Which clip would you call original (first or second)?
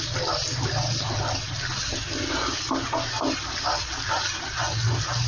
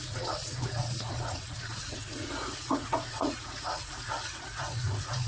first